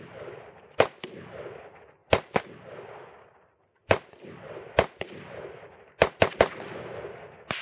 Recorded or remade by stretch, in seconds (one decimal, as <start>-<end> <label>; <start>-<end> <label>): 0.0-2.0 recorded; 2.0-6.6 remade; 6.6-7.6 recorded